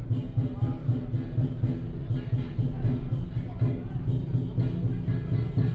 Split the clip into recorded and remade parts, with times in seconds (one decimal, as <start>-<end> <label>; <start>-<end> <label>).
0.0-5.7 recorded